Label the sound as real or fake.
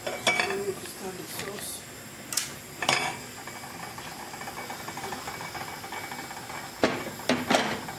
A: real